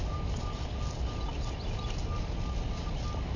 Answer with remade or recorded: recorded